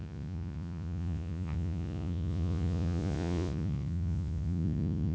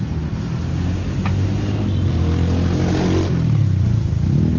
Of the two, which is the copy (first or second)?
first